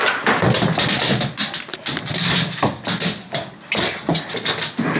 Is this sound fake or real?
real